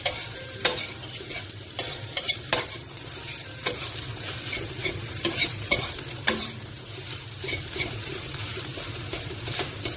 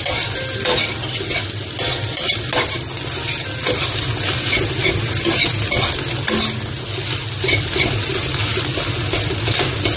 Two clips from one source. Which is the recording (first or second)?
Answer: second